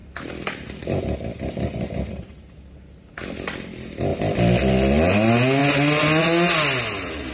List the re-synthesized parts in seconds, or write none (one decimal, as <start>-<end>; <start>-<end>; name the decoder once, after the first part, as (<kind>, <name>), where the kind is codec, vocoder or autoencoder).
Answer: none